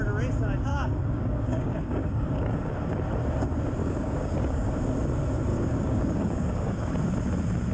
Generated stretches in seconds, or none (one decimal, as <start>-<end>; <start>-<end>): 0.7-2.7; 3.8-4.7; 5.5-6.9